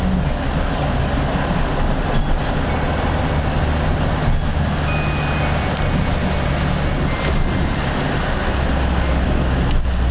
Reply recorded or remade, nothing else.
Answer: recorded